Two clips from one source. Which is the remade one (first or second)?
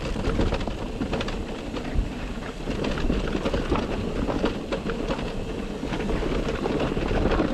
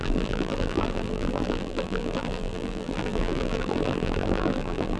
second